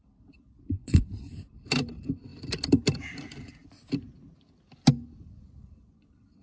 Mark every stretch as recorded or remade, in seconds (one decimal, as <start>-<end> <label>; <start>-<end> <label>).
0.0-0.8 recorded; 0.8-1.3 remade; 1.3-6.4 recorded